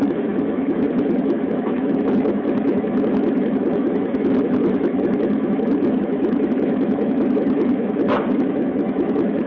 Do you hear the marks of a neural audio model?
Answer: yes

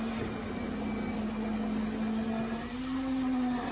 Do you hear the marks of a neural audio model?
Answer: no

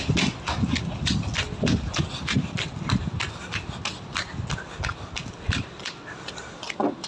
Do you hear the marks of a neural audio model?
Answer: no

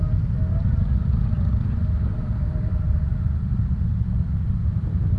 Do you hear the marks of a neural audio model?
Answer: no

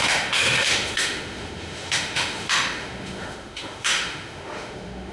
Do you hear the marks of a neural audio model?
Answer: yes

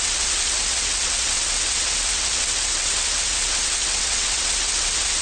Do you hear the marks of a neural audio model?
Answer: yes